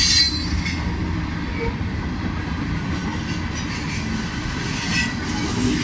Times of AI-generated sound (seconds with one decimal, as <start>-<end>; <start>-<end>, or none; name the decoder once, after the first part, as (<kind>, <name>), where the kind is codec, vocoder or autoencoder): none